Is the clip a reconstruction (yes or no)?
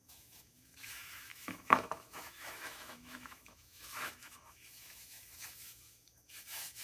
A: yes